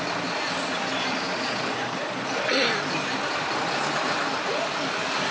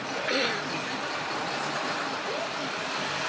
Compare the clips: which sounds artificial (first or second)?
second